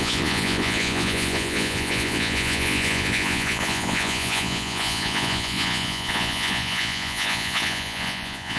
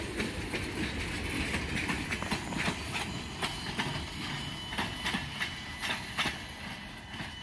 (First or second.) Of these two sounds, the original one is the second